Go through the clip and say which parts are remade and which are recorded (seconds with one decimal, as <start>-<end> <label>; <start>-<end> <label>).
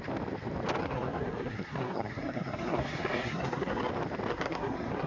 0.0-0.8 recorded; 0.8-3.9 remade; 3.9-4.3 recorded; 4.3-5.1 remade